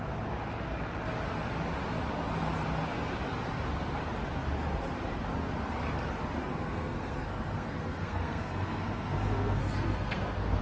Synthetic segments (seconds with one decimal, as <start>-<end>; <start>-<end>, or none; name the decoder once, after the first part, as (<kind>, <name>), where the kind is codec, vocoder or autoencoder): 6.4-10.6 (codec, SNAC)